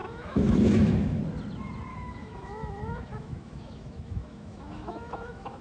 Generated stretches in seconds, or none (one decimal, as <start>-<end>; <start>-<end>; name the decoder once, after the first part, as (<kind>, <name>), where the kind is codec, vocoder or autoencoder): 0.0-1.2 (autoencoder, DAC-VAE); 1.9-5.6